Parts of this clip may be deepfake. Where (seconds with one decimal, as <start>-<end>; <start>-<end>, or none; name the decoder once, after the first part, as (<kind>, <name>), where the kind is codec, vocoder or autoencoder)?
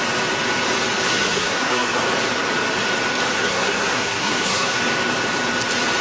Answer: 1.1-2.0 (codec, SNAC); 3.3-4.8